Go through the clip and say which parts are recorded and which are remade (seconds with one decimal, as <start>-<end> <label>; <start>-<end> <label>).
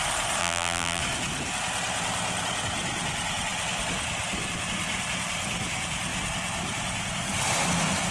0.0-0.4 recorded; 0.4-1.0 remade; 1.0-8.1 recorded